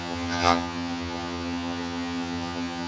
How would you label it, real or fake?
fake